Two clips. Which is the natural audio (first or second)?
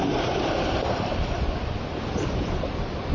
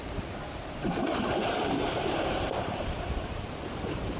first